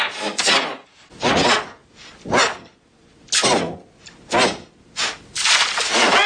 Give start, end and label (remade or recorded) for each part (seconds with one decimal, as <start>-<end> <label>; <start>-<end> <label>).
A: 0.0-6.3 recorded